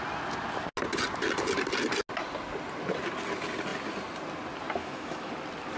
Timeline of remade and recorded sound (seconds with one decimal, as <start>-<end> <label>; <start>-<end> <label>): 0.0-4.8 recorded; 4.8-5.3 remade; 5.3-5.8 recorded